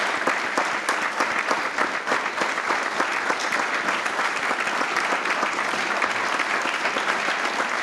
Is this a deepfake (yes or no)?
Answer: no